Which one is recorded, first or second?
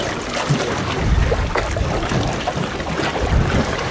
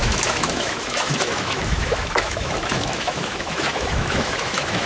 first